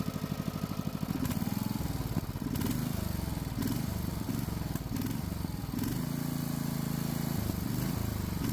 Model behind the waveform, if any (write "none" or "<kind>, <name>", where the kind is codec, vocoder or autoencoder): none